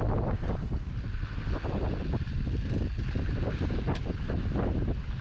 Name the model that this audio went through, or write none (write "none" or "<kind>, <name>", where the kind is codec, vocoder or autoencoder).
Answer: none